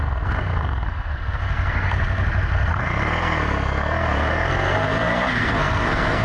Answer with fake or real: fake